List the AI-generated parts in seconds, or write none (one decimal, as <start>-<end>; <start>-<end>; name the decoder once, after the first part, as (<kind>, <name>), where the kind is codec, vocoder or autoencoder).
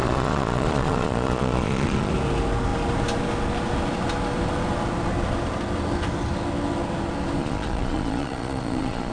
0.0-2.1 (vocoder, Vocos); 7.4-9.1